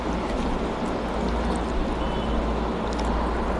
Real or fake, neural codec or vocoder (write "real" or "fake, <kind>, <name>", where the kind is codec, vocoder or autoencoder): real